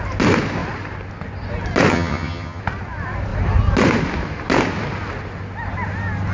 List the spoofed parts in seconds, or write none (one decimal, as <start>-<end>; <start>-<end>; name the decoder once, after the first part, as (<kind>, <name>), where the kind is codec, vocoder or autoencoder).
1.9-2.6 (vocoder, HiFi-GAN)